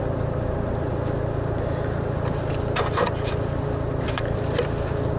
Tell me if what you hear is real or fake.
real